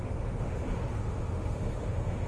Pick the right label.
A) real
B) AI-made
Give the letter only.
B